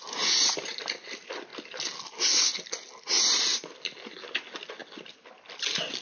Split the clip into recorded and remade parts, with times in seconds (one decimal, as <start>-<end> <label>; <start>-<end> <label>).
0.0-6.0 recorded